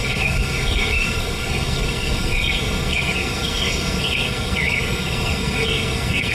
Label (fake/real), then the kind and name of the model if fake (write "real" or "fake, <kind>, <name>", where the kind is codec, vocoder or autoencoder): fake, codec, SNAC